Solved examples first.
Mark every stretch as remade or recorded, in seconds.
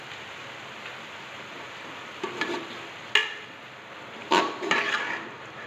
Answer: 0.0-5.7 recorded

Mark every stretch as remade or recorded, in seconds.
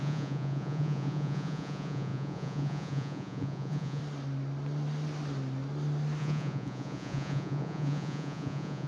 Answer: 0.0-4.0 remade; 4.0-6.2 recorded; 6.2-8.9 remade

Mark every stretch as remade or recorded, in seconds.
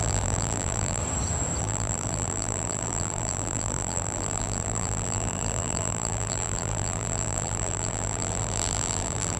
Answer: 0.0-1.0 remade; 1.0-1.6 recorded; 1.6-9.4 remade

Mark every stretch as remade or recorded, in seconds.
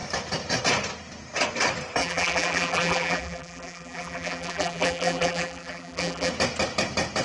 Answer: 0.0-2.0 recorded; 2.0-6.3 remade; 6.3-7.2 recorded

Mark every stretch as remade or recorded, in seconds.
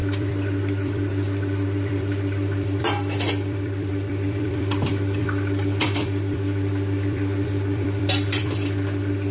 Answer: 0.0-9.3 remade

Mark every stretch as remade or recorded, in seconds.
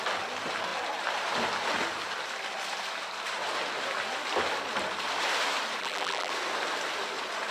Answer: 0.0-5.8 recorded; 5.8-6.3 remade; 6.3-7.5 recorded